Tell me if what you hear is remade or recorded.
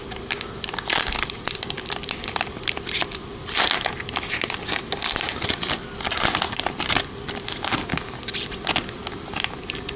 recorded